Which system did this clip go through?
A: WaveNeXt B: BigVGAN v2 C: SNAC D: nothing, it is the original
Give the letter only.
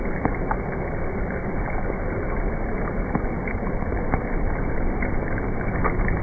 D